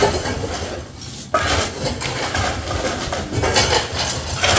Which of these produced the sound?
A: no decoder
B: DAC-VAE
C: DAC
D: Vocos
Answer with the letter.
A